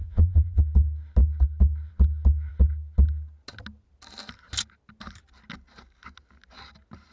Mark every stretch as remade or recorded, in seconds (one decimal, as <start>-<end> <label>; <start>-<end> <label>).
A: 0.0-0.6 remade; 0.6-7.1 recorded